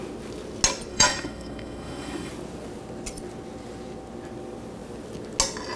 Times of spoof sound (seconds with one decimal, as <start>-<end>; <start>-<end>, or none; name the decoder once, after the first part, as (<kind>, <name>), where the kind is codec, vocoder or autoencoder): 0.9-2.3 (autoencoder, DAC-VAE)